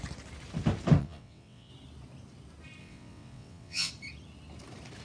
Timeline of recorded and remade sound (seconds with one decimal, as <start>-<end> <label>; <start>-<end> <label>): 0.0-1.0 recorded; 1.0-1.7 remade; 1.7-2.8 recorded; 2.8-3.9 remade; 3.9-5.0 recorded